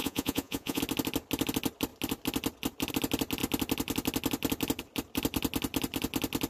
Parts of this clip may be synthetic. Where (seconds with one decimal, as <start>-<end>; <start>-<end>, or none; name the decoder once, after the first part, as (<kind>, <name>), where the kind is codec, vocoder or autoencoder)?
0.0-0.8 (vocoder, Vocos)